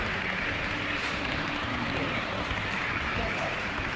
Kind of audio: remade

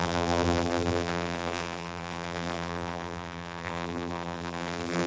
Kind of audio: remade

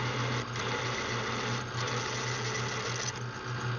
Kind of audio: recorded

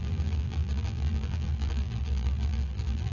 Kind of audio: remade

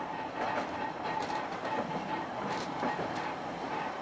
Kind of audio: remade